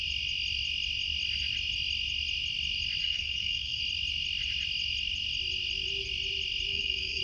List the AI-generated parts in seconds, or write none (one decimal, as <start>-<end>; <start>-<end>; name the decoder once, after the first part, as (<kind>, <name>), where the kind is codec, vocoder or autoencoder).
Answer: 3.0-3.8 (codec, SNAC); 6.7-7.2